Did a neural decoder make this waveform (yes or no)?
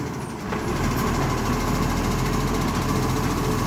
no